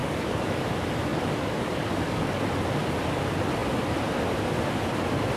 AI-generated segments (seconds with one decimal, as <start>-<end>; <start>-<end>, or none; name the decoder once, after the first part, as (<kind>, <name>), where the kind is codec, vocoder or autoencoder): 0.0-0.7 (codec, DAC); 1.1-2.4

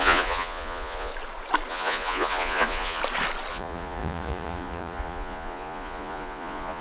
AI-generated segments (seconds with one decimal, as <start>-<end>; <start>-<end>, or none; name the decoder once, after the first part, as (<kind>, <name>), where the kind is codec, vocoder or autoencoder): 0.0-1.1 (vocoder, Vocos); 1.7-3.0; 3.5-6.8